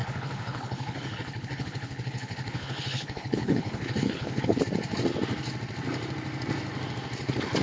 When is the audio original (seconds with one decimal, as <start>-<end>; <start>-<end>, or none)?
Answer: 4.6-7.6

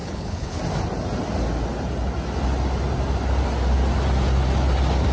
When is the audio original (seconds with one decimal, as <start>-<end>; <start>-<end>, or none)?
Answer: 0.6-5.1

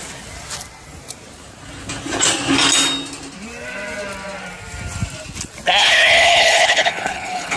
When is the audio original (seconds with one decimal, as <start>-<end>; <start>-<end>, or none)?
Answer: 0.0-5.8